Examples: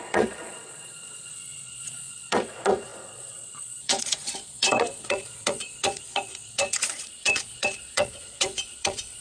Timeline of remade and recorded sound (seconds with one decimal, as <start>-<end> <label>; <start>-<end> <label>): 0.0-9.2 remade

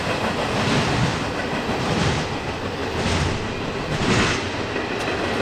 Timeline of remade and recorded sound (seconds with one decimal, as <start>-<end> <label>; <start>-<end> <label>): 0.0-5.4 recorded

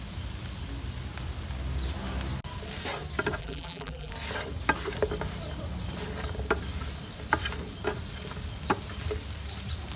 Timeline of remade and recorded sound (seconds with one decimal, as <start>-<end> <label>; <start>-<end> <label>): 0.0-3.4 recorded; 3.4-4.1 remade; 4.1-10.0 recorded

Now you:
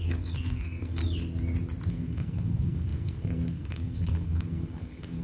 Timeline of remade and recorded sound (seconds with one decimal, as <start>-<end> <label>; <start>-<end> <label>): 0.0-1.0 remade; 1.0-1.9 recorded; 1.9-5.2 remade